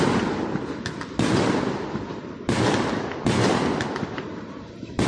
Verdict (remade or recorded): recorded